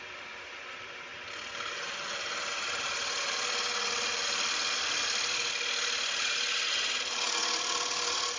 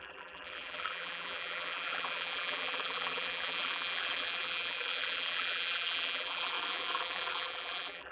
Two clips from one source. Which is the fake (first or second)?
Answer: second